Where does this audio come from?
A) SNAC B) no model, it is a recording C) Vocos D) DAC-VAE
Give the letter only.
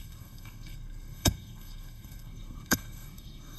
A